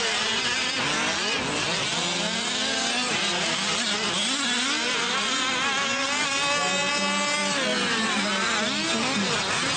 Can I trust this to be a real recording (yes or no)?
yes